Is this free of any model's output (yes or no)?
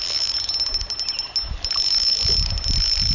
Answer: yes